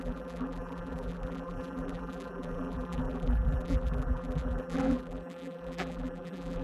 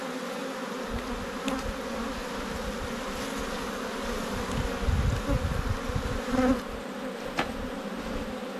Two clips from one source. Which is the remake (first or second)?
first